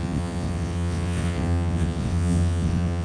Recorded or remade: remade